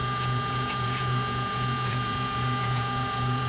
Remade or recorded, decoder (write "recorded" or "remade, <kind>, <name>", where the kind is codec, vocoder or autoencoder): remade, vocoder, Vocos